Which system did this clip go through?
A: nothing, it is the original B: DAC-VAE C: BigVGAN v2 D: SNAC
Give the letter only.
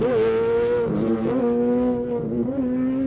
A